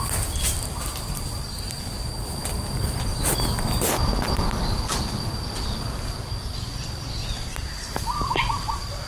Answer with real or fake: real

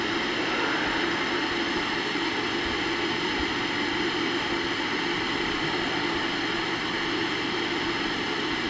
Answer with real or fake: fake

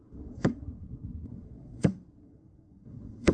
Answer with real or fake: fake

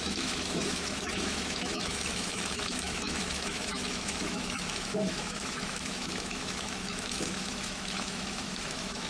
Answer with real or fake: fake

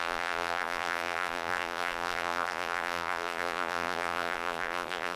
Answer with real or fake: fake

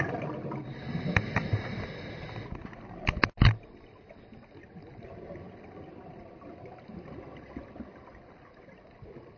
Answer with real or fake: real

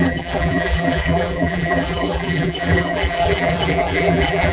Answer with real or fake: fake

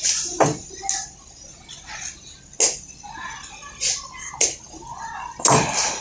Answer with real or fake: real